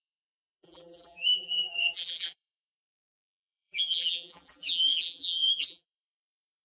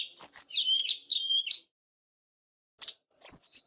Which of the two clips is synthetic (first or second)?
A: first